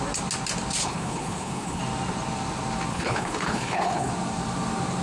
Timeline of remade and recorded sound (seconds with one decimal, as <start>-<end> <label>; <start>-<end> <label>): 0.0-0.8 recorded; 0.8-1.8 remade; 1.8-2.9 recorded; 2.9-4.1 remade; 4.1-5.0 recorded